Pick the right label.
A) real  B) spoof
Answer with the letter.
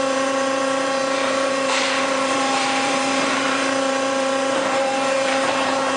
B